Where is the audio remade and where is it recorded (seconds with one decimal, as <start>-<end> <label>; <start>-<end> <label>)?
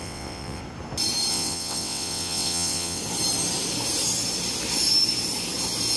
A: 0.0-0.6 remade; 0.6-1.3 recorded; 1.3-3.0 remade; 3.0-6.0 recorded